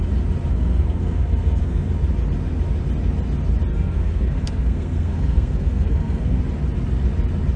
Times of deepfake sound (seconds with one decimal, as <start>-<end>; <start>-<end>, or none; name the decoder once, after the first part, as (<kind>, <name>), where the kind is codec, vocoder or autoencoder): 0.5-1.9 (codec, SNAC); 3.7-6.4